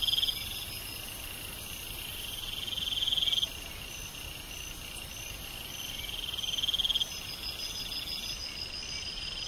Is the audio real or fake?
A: real